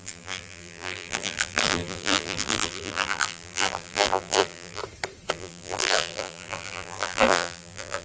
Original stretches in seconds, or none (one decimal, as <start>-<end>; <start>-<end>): 4.8-5.3